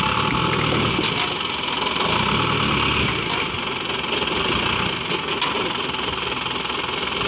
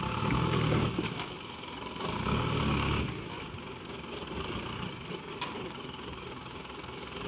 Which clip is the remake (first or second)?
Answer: second